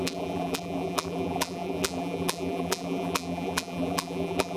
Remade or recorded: remade